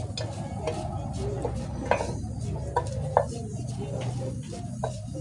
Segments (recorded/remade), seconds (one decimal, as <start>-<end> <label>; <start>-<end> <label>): 0.0-5.2 recorded